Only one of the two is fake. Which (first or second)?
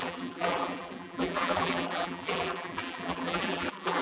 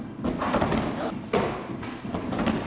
first